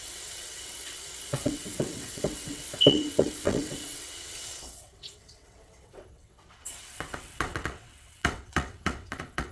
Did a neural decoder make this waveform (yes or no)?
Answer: yes